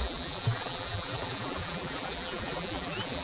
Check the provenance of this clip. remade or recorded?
remade